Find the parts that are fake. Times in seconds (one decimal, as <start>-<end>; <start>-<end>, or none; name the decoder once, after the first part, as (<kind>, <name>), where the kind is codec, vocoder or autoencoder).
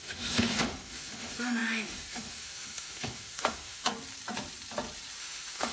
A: 0.0-3.9 (autoencoder, DAC-VAE); 5.2-5.7